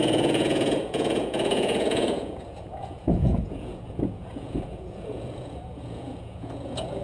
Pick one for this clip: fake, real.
fake